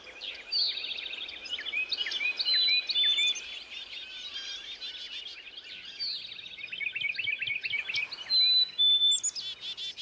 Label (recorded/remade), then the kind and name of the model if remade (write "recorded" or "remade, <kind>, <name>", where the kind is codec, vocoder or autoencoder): recorded